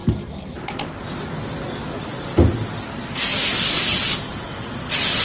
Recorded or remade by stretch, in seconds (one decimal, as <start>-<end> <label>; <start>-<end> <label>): 0.0-0.8 remade; 0.8-5.2 recorded